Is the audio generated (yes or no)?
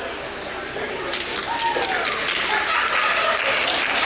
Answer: no